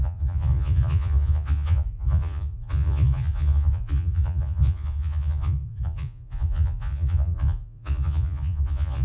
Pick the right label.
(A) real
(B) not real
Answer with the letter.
B